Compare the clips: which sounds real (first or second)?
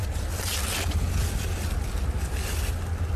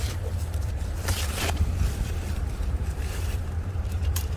first